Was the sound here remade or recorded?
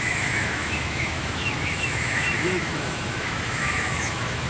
remade